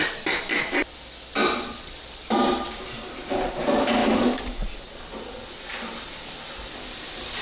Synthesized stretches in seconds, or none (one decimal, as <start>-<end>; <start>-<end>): none